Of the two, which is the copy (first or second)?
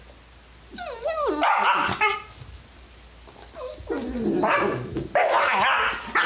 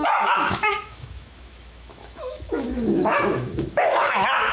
second